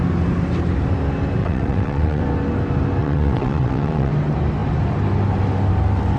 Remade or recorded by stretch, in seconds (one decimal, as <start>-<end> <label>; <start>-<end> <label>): 0.0-1.4 recorded; 1.4-2.2 remade; 2.2-3.0 recorded; 3.0-4.1 remade; 4.1-6.2 recorded